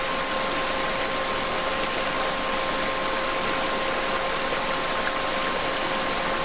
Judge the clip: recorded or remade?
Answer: recorded